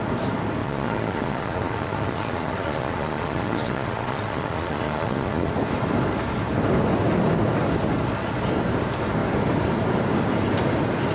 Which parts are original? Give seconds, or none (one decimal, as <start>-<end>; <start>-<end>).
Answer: 0.0-0.6; 5.5-11.1

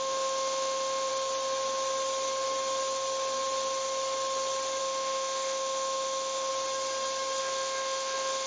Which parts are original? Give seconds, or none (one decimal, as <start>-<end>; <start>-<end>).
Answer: 1.1-4.8; 6.5-7.4

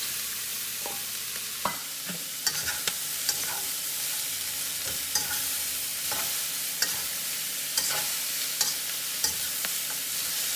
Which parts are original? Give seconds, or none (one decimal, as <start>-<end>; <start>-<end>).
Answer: 0.5-1.1